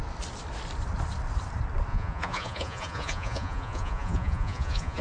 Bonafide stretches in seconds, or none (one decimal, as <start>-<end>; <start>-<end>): 0.0-1.9